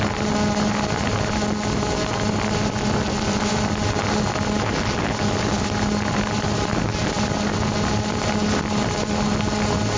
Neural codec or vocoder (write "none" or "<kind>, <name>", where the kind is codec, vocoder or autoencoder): none